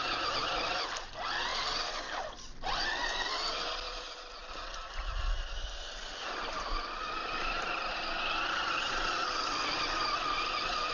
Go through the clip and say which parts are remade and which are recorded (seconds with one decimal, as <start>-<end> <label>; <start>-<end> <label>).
0.0-10.9 recorded